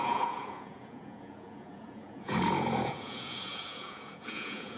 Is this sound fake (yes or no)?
yes